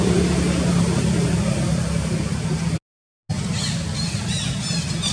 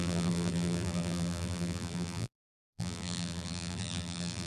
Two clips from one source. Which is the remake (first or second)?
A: second